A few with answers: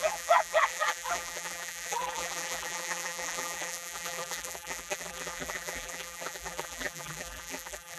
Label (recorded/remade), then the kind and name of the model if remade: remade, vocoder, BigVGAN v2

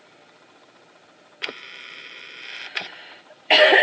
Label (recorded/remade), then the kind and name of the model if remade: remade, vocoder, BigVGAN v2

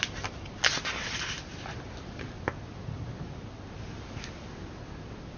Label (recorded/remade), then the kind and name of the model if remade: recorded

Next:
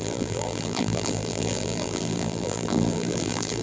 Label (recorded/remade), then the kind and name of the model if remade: remade, vocoder, BigVGAN v2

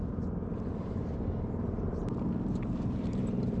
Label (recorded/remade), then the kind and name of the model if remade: remade, vocoder, BigVGAN v2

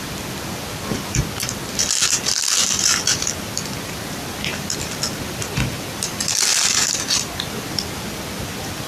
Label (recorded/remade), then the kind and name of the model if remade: recorded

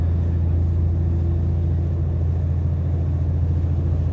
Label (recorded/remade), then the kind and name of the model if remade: recorded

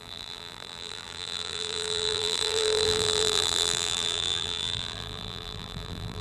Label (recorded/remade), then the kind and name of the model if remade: remade, vocoder, BigVGAN v2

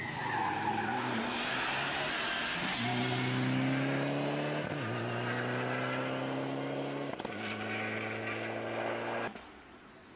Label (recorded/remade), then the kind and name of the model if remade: recorded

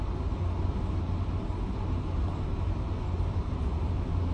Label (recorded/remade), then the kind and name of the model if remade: recorded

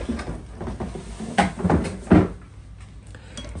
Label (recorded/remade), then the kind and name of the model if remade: recorded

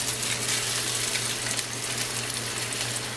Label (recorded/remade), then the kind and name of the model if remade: remade, vocoder, BigVGAN v2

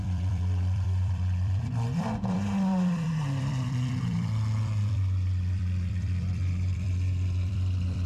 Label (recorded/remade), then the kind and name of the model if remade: remade, vocoder, BigVGAN v2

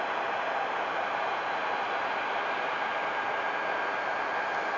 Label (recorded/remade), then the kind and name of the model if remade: remade, vocoder, BigVGAN v2